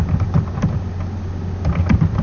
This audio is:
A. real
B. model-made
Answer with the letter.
A